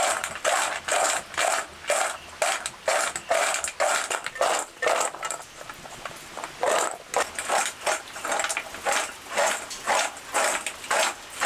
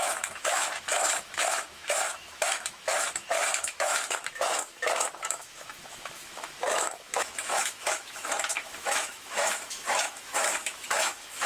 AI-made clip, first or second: second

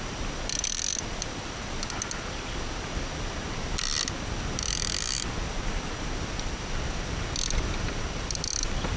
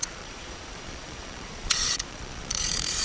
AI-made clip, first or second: second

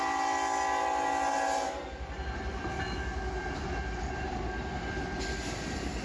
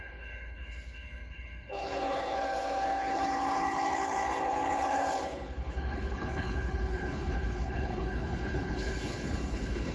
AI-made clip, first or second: second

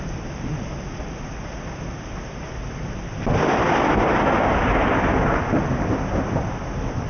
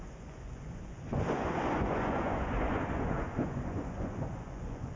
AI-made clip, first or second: second